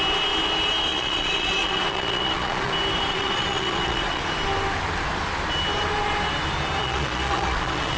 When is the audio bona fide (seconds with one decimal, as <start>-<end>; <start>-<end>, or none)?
0.0-0.9; 2.7-3.1; 4.2-6.8